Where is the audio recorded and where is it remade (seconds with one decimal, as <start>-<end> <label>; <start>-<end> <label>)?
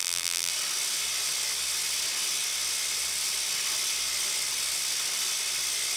0.0-0.5 remade; 0.5-6.0 recorded